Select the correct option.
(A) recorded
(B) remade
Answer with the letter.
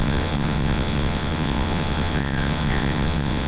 B